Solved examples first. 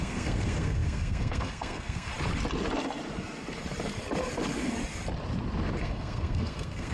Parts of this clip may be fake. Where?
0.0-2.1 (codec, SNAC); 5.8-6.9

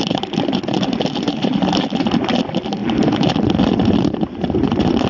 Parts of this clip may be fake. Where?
none

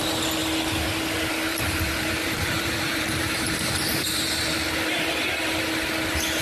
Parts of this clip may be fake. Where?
1.5-5.3 (vocoder, BigVGAN v2)

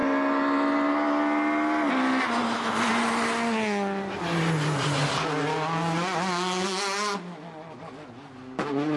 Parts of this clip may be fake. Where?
none